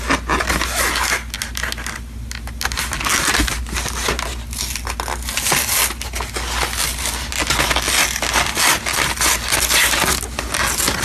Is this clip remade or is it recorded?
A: recorded